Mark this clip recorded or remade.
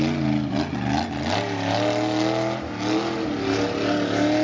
recorded